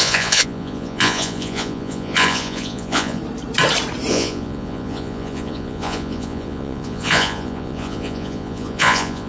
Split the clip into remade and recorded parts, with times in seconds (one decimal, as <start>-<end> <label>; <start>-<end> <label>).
0.0-3.2 remade; 3.2-4.1 recorded; 4.1-9.3 remade